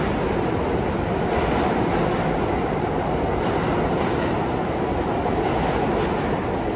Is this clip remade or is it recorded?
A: recorded